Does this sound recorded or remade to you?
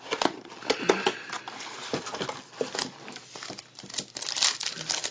recorded